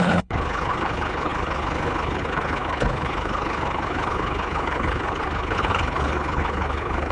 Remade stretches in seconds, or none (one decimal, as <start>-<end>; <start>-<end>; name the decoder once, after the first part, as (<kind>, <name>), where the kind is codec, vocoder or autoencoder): 0.0-7.1 (codec, HILCodec)